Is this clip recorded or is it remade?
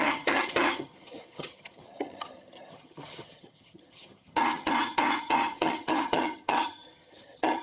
remade